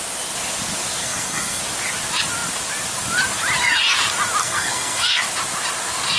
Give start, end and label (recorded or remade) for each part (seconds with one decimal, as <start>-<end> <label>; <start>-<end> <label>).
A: 0.0-1.0 recorded; 1.0-1.6 remade; 1.6-4.4 recorded; 4.4-5.2 remade; 5.2-6.2 recorded